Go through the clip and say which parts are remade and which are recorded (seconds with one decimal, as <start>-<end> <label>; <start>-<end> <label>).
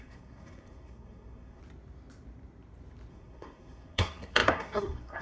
0.0-1.6 remade; 1.6-3.1 recorded; 3.1-5.2 remade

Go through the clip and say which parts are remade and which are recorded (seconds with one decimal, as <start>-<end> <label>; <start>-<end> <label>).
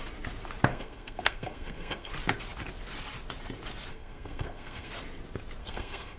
0.0-0.7 recorded; 0.7-2.1 remade; 2.1-3.9 recorded; 3.9-4.9 remade; 4.9-5.6 recorded; 5.6-6.2 remade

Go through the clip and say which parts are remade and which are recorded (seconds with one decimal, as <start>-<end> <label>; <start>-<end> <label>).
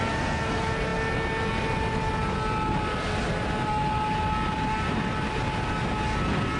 0.0-6.6 recorded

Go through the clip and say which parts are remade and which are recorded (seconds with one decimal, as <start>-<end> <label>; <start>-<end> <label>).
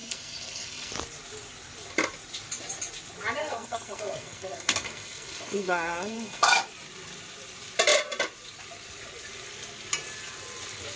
0.0-0.9 remade; 0.9-3.4 recorded; 3.4-6.6 remade; 6.6-11.0 recorded